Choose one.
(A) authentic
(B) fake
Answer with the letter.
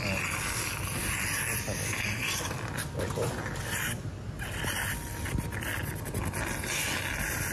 A